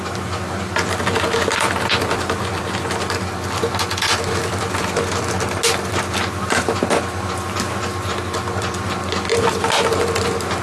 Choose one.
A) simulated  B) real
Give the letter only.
B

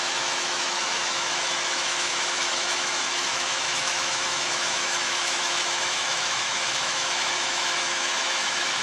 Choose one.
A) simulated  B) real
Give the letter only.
A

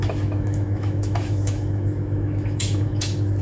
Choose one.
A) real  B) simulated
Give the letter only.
B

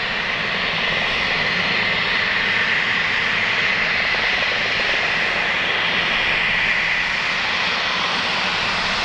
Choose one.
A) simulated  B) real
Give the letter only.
B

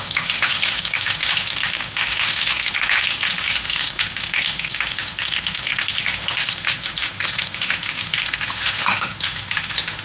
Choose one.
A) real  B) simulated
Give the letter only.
B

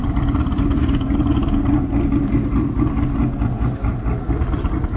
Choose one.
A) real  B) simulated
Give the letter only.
A